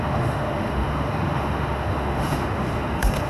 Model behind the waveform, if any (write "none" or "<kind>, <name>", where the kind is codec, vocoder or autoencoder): autoencoder, DAC-VAE